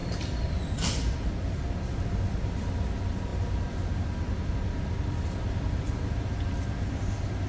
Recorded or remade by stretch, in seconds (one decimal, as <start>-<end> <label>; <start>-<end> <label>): 0.0-1.3 remade; 1.3-7.5 recorded